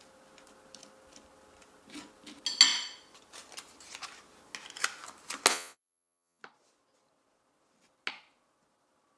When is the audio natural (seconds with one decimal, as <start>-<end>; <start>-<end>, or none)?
0.0-5.5; 6.4-9.2